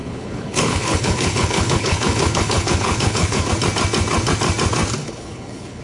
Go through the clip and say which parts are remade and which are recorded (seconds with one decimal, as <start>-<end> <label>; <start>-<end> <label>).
0.0-3.5 remade; 3.5-5.0 recorded; 5.0-5.8 remade